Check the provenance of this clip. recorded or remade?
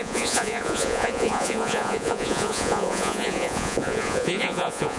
remade